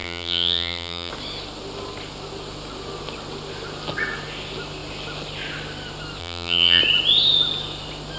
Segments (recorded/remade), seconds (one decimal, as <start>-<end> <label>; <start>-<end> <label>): 0.0-1.1 remade; 1.1-6.2 recorded; 6.2-6.8 remade; 6.8-8.2 recorded